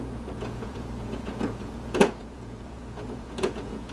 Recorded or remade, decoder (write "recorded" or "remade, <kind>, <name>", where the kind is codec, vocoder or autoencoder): remade, vocoder, Vocos